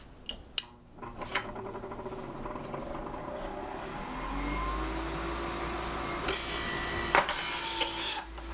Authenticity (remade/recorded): recorded